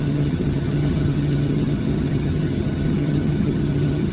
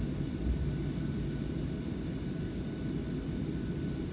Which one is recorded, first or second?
second